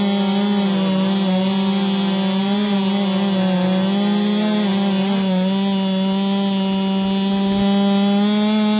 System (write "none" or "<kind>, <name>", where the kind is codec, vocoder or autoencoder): none